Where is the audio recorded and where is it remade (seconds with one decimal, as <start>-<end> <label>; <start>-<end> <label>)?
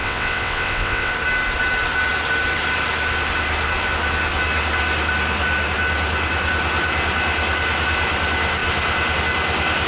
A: 0.0-1.1 remade; 1.1-9.9 recorded